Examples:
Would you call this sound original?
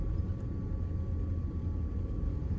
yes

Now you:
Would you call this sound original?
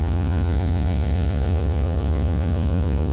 no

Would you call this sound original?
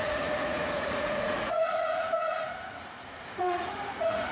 no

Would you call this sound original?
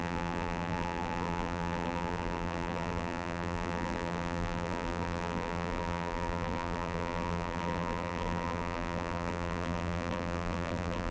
no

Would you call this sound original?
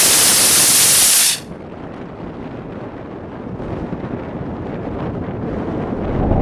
yes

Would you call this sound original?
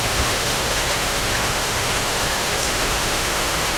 no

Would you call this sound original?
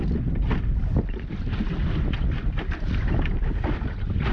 yes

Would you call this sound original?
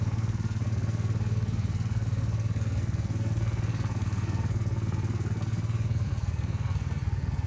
no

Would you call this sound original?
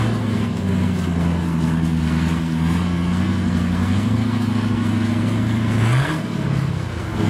no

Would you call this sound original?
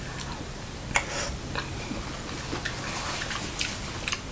yes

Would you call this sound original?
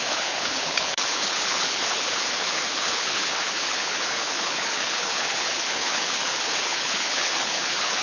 no